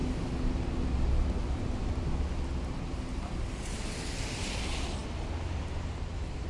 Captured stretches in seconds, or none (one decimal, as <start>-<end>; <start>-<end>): 0.0-6.5